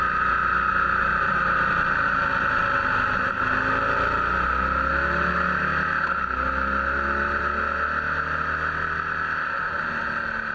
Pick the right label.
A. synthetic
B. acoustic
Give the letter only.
B